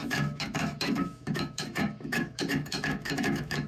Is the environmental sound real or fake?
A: fake